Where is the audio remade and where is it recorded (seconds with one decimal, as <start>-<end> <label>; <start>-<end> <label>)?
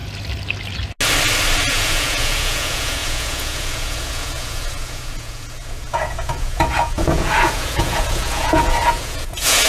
0.0-1.7 recorded; 1.7-9.7 remade